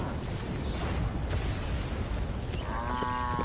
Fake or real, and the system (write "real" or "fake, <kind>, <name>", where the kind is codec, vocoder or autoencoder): real